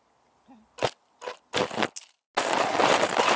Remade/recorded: recorded